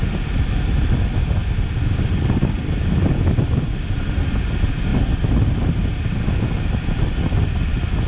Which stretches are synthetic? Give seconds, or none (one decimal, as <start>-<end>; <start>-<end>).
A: none